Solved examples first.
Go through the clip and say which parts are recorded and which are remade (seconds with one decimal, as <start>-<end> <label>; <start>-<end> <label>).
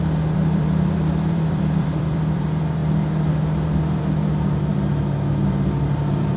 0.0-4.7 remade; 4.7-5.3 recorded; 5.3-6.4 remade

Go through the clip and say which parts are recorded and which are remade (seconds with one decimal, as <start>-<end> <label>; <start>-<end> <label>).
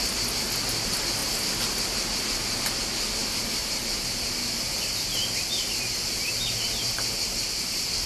0.0-8.1 recorded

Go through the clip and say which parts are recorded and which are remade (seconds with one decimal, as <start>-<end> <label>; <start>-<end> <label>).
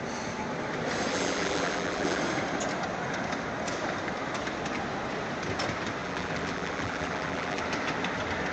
0.0-1.1 recorded; 1.1-2.2 remade; 2.2-6.0 recorded; 6.0-7.6 remade; 7.6-8.5 recorded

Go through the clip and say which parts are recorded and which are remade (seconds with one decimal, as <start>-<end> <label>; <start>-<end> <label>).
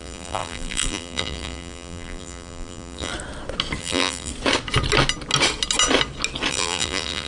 0.0-3.1 remade; 3.1-3.8 recorded; 3.8-4.3 remade; 4.3-6.5 recorded; 6.5-7.3 remade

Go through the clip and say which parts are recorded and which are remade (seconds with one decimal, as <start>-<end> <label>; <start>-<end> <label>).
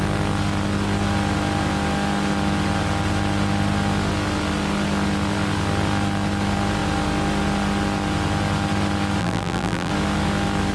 0.0-9.2 recorded; 9.2-9.9 remade; 9.9-10.7 recorded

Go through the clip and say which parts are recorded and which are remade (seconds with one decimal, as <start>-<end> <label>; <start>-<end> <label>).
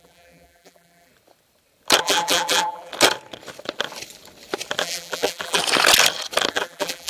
0.0-1.1 remade; 1.1-2.0 recorded; 2.0-2.9 remade; 2.9-4.8 recorded; 4.8-5.6 remade; 5.6-6.5 recorded; 6.5-7.1 remade